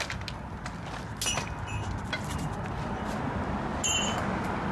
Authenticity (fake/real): real